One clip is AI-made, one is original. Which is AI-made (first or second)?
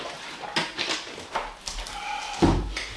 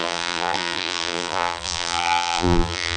second